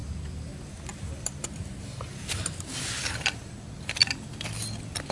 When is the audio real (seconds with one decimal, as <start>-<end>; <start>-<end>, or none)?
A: 0.5-0.9; 3.0-5.1